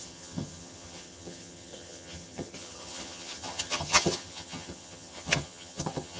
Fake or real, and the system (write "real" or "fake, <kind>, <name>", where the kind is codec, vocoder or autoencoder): fake, vocoder, HiFi-GAN